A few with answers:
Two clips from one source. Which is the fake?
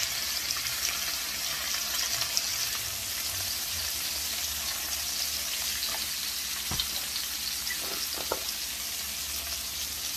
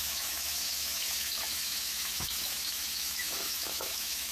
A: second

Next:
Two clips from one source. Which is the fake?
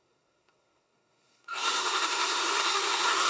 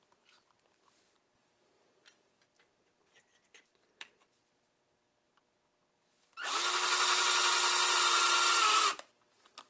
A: first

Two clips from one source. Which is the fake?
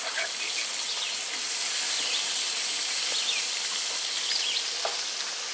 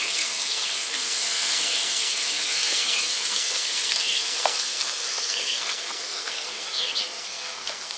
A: second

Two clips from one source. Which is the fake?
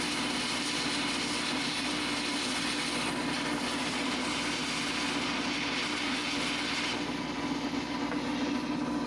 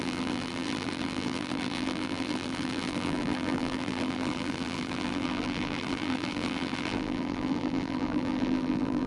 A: second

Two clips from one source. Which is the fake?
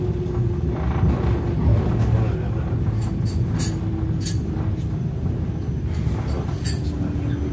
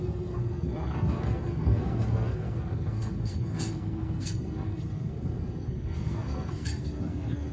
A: second